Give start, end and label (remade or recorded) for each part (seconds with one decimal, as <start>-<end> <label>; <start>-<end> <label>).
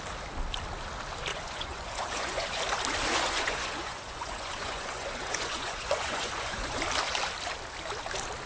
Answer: 0.0-1.3 recorded; 1.3-2.6 remade; 2.6-3.1 recorded; 3.1-6.8 remade; 6.8-8.5 recorded